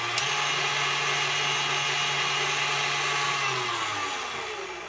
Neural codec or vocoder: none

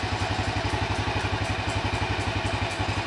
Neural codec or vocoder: none